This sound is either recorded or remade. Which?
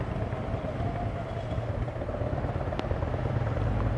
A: recorded